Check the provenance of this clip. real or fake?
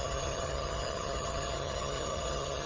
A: fake